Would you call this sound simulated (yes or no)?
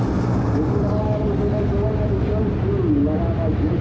no